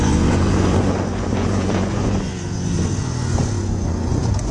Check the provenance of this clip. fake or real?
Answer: fake